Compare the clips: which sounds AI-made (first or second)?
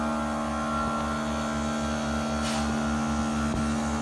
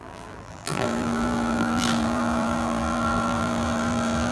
second